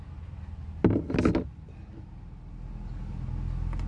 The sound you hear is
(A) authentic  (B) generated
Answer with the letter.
A